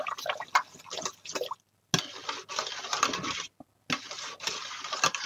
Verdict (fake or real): real